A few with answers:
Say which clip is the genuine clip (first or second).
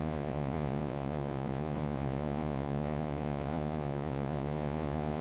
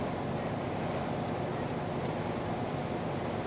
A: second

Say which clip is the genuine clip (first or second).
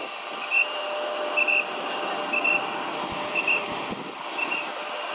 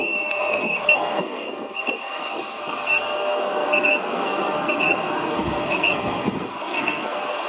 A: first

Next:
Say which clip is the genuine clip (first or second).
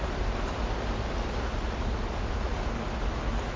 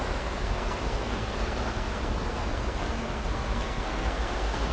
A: first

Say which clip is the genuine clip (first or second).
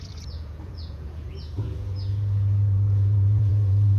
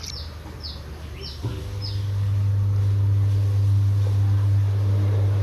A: second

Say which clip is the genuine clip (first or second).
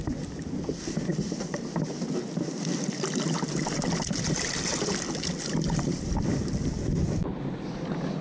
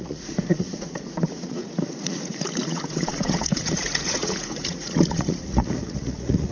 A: first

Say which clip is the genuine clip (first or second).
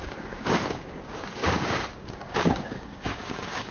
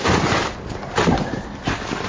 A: second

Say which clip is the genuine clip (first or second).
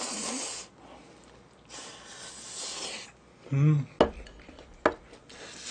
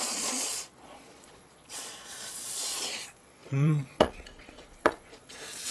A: first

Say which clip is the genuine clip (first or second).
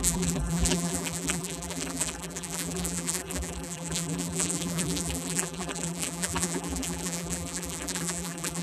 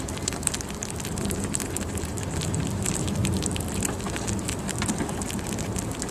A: second